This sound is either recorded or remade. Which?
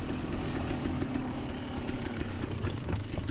remade